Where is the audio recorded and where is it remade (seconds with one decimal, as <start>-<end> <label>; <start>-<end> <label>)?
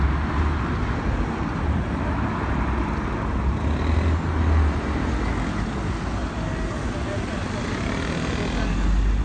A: 0.0-9.2 recorded